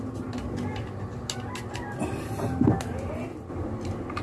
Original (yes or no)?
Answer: yes